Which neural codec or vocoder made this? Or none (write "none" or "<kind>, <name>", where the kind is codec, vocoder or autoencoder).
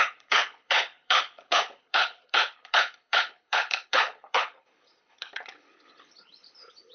codec, HILCodec